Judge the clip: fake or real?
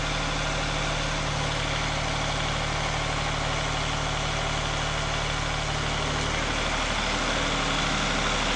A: real